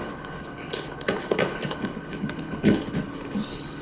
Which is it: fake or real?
fake